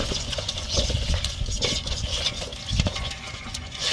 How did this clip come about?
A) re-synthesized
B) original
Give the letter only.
A